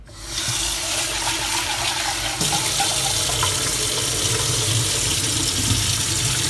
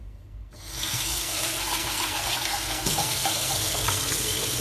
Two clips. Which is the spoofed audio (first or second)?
second